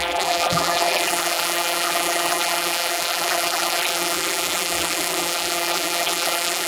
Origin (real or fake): fake